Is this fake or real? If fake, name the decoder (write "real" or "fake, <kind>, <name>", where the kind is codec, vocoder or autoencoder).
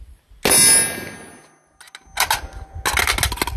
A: real